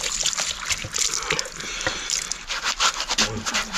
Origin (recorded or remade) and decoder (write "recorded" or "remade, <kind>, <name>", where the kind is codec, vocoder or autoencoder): recorded